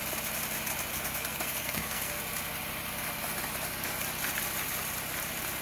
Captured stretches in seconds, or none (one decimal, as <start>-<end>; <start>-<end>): 0.0-0.9; 2.2-5.6